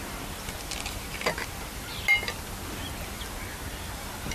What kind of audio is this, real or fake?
real